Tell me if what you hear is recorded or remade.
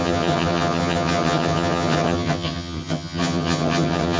remade